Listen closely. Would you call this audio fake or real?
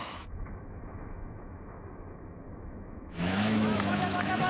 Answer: fake